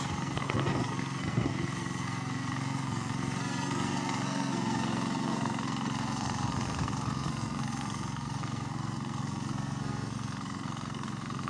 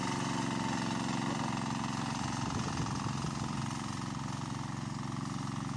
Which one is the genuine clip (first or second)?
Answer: second